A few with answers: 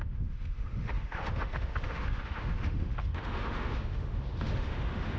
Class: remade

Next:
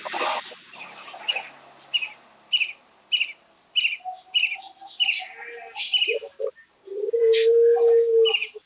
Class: recorded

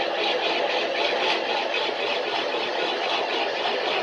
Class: recorded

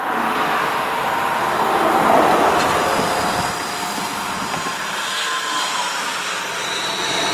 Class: recorded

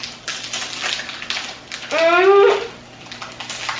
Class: recorded